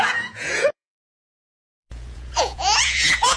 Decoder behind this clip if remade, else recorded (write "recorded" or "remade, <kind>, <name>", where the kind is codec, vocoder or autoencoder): remade, vocoder, Vocos